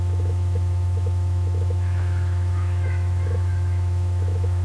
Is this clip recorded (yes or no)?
no